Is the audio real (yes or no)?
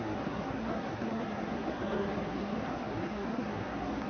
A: no